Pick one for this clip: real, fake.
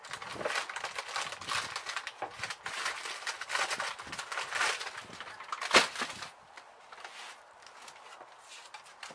real